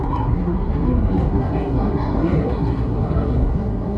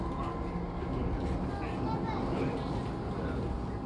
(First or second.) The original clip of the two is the second